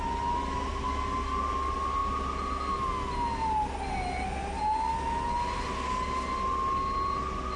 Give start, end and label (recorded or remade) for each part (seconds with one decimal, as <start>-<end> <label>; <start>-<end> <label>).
0.0-7.6 recorded